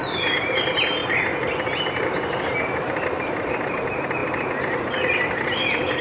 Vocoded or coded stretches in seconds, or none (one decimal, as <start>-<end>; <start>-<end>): none